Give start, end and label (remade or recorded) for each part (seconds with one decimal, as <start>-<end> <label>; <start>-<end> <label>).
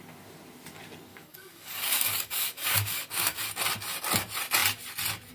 0.0-1.1 recorded; 1.1-3.4 remade; 3.4-5.3 recorded